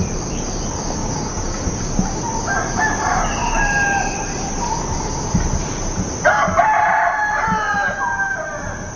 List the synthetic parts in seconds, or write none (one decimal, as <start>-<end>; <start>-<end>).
1.0-1.9